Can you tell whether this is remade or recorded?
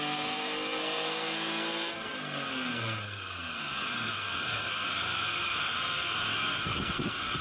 remade